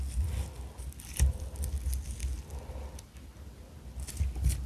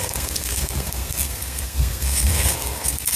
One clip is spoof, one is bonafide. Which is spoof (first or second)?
second